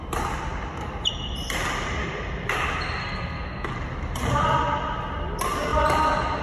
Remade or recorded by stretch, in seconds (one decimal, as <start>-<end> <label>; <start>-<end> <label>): 0.0-3.0 recorded; 3.0-3.7 remade; 3.7-6.4 recorded